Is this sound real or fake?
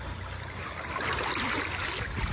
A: real